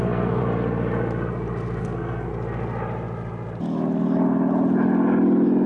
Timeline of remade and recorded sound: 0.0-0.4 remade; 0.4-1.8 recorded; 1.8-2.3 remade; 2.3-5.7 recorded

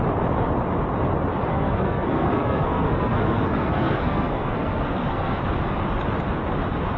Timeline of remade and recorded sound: 0.0-1.5 recorded; 1.5-5.4 remade; 5.4-7.0 recorded

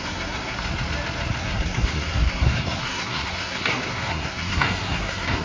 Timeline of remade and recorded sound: 0.0-0.6 remade; 0.6-1.4 recorded; 1.4-5.4 remade

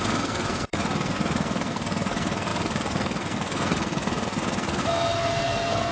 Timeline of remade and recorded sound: 0.0-5.9 remade

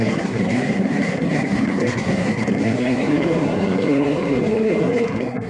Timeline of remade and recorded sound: 0.0-5.5 remade